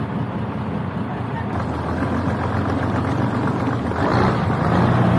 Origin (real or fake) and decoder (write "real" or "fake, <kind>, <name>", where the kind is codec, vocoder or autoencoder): real